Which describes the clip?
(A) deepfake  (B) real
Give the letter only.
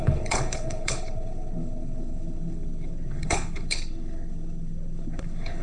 A